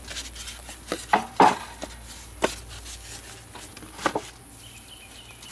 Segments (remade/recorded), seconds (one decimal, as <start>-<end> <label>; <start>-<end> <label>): 0.0-5.5 recorded